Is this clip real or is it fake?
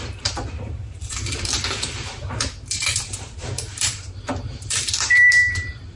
fake